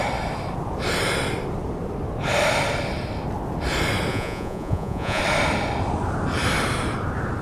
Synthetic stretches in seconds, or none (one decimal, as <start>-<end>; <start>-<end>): 4.1-5.2